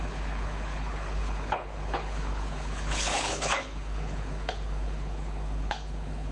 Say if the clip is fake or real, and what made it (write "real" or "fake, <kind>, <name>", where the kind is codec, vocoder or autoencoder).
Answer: fake, codec, HILCodec